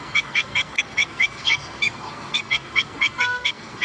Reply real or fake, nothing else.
fake